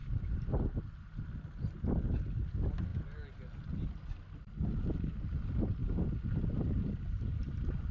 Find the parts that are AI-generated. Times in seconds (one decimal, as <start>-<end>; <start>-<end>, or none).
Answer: 0.0-0.8; 5.8-7.9